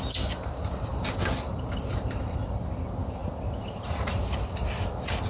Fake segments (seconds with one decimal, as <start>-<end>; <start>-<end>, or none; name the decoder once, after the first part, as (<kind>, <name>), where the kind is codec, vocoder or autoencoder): none